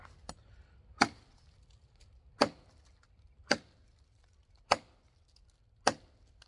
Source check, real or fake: real